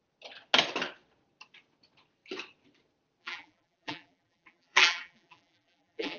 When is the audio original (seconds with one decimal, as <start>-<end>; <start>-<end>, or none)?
0.0-3.2